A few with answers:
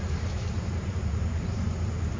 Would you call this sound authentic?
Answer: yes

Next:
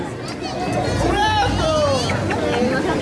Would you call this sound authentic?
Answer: yes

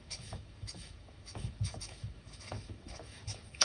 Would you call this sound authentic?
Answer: no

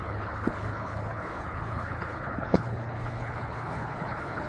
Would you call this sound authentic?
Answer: no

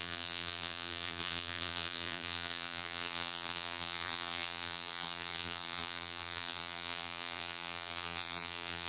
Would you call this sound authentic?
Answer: no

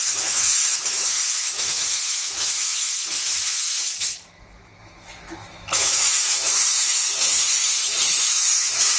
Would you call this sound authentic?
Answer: no